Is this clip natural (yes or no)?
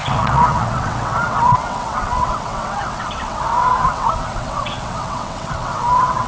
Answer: no